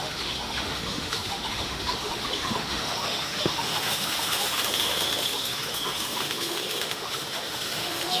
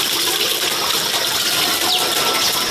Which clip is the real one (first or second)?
second